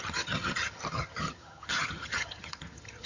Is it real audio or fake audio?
fake